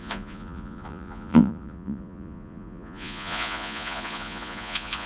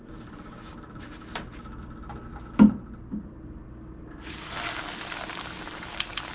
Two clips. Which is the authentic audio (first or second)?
second